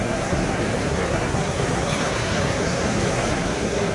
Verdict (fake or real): fake